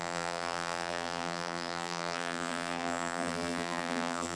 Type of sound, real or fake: fake